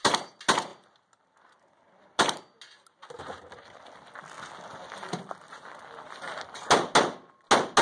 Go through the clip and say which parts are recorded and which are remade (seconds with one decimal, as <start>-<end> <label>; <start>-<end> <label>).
0.0-7.8 recorded